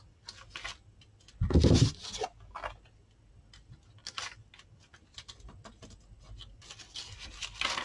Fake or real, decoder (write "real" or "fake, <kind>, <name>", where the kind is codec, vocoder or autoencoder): real